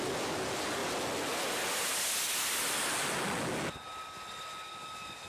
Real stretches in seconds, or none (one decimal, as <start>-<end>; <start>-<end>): 0.0-5.3